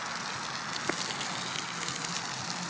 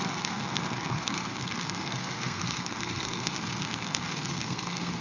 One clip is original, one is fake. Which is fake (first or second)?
second